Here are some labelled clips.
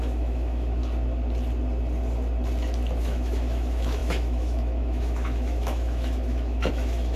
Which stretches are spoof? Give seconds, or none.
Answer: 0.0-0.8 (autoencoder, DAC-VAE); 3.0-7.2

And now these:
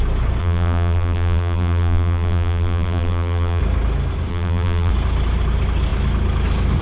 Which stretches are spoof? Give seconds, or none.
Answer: 0.4-3.6 (vocoder, BigVGAN v2); 4.3-4.9

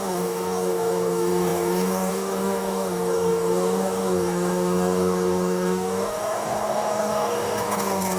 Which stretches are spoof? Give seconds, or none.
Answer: 0.0-8.2 (codec, DAC)